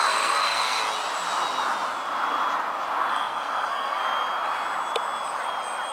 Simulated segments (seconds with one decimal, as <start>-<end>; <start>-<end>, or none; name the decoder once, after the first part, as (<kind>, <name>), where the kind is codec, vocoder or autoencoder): 0.0-0.8 (codec, SNAC); 3.1-4.0